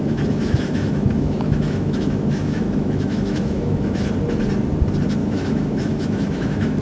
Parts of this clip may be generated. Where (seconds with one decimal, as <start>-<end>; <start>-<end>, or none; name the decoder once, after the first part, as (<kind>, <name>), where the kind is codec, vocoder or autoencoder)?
0.0-4.1 (autoencoder, DAC-VAE); 5.2-6.8